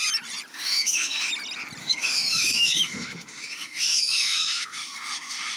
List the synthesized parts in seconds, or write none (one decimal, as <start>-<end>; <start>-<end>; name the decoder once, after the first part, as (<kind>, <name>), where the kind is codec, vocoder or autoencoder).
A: 0.5-1.3 (autoencoder, DAC-VAE); 1.8-5.6